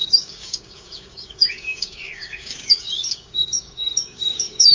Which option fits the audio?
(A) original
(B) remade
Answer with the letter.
B